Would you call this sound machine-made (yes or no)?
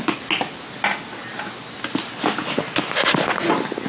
no